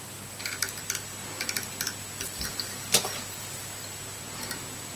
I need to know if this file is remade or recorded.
recorded